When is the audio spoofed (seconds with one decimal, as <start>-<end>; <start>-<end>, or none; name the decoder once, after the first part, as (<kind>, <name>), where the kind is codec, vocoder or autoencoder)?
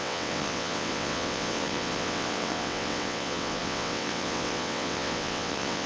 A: 0.0-5.9 (vocoder, WaveNeXt)